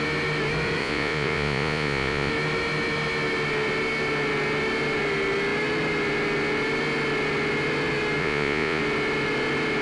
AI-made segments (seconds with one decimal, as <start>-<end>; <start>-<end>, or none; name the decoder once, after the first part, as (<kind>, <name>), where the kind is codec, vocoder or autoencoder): 0.8-2.3 (vocoder, Vocos); 8.2-8.8